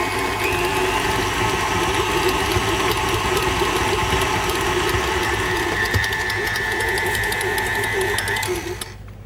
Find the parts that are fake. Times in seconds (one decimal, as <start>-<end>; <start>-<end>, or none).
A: none